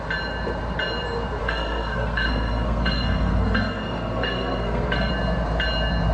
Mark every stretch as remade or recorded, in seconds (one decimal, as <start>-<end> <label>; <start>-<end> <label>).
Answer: 0.0-1.4 recorded; 1.4-5.1 remade; 5.1-6.1 recorded